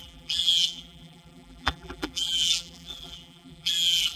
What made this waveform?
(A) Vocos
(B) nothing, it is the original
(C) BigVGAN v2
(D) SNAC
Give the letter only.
C